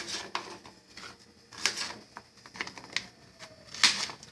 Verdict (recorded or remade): recorded